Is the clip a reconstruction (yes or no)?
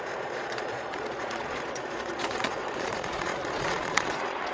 yes